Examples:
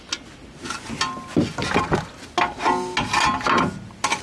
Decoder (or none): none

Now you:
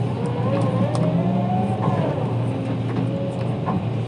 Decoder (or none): none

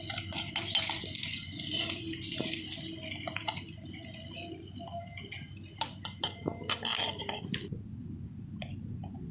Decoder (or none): none